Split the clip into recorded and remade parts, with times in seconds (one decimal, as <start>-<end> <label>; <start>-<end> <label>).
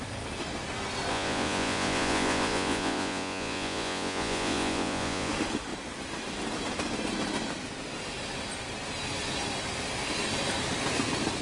0.0-1.1 recorded; 1.1-5.3 remade; 5.3-11.4 recorded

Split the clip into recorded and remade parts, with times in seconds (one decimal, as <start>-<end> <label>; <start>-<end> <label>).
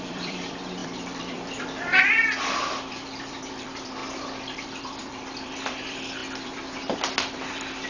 0.0-4.0 remade; 4.0-4.6 recorded; 4.6-7.9 remade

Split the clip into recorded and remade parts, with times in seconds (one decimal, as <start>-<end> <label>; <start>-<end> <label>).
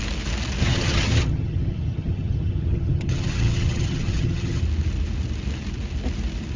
0.0-0.6 recorded; 0.6-4.6 remade; 4.6-6.6 recorded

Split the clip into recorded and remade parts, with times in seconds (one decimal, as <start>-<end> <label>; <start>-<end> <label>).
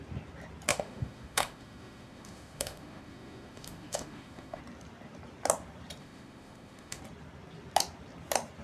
0.0-0.7 recorded; 0.7-4.6 remade; 4.6-6.0 recorded; 6.0-7.0 remade; 7.0-8.6 recorded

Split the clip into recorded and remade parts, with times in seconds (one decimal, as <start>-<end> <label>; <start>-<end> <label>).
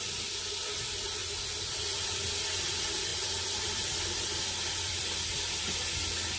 0.0-1.2 recorded; 1.2-2.3 remade; 2.3-3.1 recorded; 3.1-5.9 remade; 5.9-6.4 recorded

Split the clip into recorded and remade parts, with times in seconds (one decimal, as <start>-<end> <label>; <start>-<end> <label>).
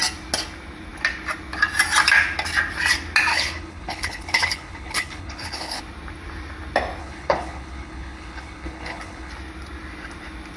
0.0-3.3 recorded; 3.3-5.8 remade; 5.8-7.0 recorded; 7.0-9.3 remade; 9.3-10.6 recorded